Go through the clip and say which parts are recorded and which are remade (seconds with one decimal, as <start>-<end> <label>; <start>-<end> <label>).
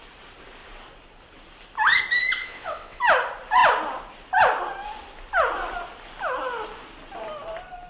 0.0-2.4 recorded; 2.4-3.0 remade; 3.0-7.9 recorded